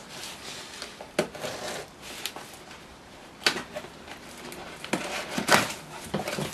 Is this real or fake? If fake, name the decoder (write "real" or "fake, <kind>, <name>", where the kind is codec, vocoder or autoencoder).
real